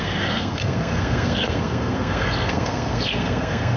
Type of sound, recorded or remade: remade